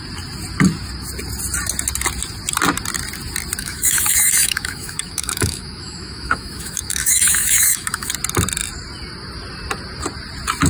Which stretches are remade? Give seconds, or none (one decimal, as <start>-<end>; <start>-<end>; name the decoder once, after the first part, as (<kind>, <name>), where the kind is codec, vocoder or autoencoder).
3.6-8.1 (autoencoder, DAC-VAE)